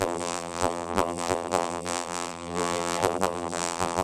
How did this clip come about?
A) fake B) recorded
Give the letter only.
A